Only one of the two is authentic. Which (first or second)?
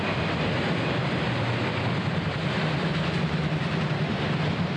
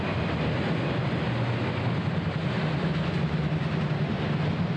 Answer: second